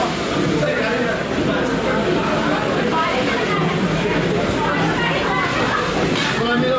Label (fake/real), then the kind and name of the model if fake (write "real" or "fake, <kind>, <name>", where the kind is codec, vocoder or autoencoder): real